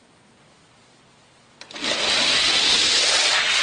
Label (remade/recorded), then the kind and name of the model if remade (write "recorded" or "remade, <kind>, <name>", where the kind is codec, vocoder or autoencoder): recorded